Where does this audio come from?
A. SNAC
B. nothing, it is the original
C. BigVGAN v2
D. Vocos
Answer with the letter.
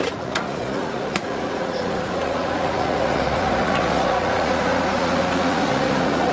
D